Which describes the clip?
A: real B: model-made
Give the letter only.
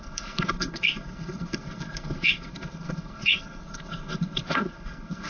B